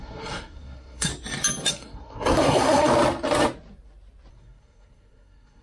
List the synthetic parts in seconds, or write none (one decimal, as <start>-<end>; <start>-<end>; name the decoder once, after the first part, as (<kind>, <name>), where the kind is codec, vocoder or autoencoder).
0.0-1.1 (codec, SNAC); 1.7-2.9; 4.3-5.6